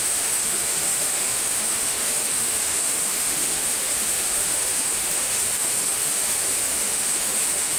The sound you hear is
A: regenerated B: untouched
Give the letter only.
A